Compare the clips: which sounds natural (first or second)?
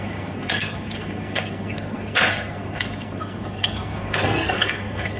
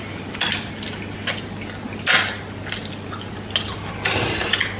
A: second